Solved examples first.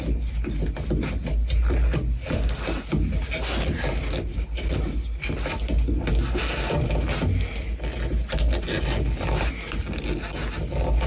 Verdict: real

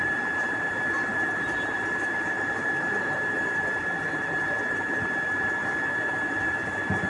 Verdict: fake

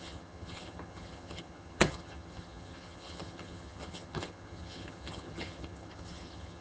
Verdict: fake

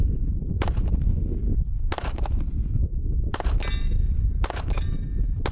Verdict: real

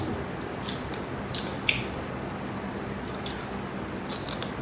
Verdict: real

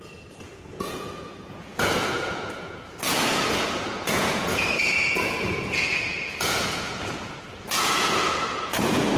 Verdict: fake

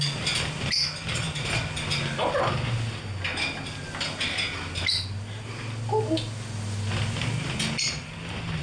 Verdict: real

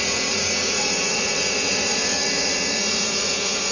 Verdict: fake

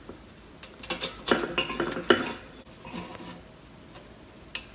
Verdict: real